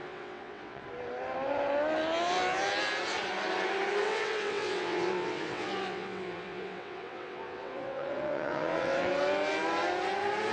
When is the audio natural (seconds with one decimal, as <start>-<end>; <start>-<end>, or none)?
0.8-4.0; 9.1-10.5